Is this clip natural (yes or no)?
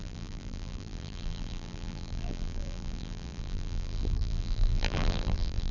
no